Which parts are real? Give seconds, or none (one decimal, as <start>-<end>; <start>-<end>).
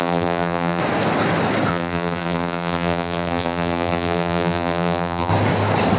0.8-1.7; 5.3-6.0